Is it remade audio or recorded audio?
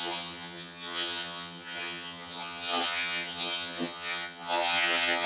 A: remade